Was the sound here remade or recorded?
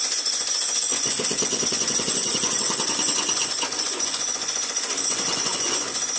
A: remade